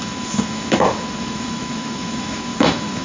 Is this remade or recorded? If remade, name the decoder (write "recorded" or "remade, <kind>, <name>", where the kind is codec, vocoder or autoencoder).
remade, autoencoder, DAC-VAE